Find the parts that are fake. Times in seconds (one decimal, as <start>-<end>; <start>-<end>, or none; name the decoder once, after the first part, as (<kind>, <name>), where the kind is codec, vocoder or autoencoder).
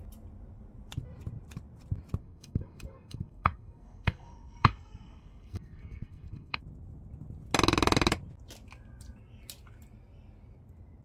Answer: 2.2-6.6 (codec, SNAC)